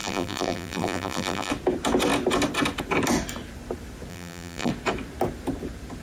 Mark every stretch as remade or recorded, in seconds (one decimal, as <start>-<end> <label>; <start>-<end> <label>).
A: 0.0-1.5 remade; 1.5-4.1 recorded; 4.1-4.7 remade; 4.7-6.0 recorded